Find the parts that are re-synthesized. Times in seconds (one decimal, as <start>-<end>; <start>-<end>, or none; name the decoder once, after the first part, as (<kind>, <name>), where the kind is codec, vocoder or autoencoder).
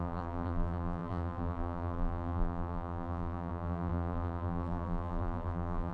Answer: 0.0-5.9 (vocoder, BigVGAN v2)